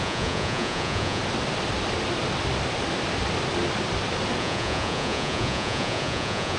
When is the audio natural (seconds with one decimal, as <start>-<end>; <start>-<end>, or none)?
1.2-4.4